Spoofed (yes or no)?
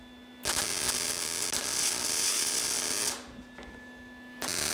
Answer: no